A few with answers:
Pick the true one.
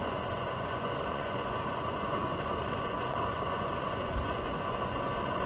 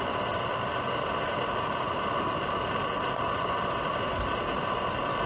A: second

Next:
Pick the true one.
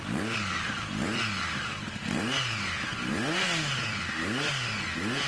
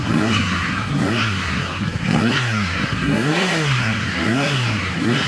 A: first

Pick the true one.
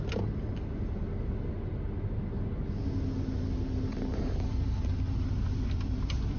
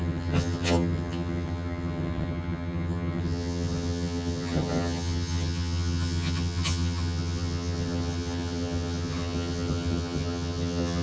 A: first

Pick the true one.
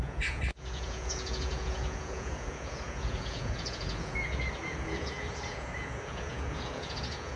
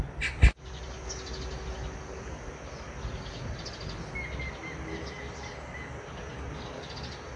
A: second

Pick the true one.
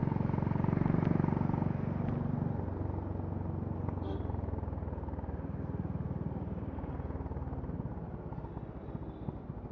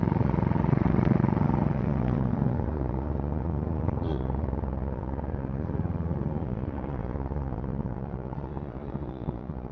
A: first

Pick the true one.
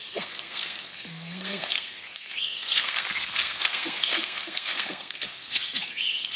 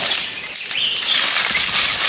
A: second